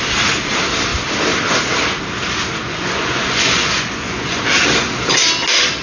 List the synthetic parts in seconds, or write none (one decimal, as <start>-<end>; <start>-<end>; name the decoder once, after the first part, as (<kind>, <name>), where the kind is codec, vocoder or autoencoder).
2.6-4.4 (vocoder, Vocos)